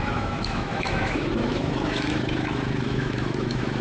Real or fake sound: fake